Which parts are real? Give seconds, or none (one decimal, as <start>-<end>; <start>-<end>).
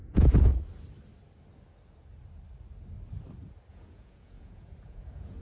0.5-3.7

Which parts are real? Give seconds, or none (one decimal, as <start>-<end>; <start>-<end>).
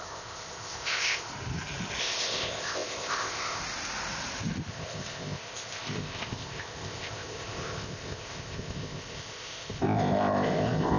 1.3-2.0; 3.6-4.7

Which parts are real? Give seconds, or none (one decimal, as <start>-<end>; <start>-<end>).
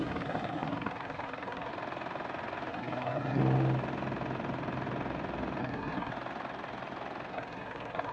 1.7-2.7; 3.4-5.6; 6.1-7.3